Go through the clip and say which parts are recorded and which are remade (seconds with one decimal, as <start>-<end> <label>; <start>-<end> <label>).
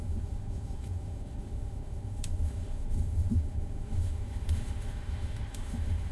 0.0-6.1 remade